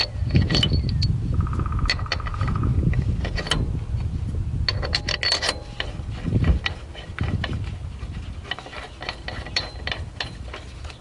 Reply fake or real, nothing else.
real